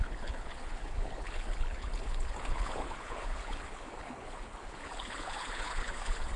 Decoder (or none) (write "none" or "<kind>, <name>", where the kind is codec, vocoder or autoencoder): codec, HILCodec